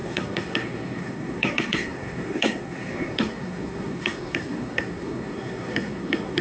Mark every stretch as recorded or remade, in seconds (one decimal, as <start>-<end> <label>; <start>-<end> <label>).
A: 0.0-6.4 remade